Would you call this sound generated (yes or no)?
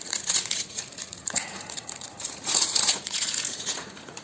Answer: yes